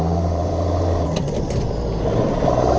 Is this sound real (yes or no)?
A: no